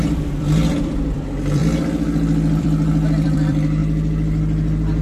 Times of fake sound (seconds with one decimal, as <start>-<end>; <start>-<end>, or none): 0.0-1.6; 2.6-3.8